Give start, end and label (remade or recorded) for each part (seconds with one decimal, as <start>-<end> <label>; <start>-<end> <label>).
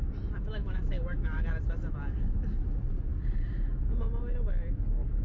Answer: 0.0-0.6 recorded; 0.6-1.4 remade; 1.4-5.2 recorded